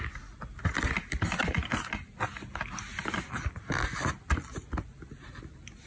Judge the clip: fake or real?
real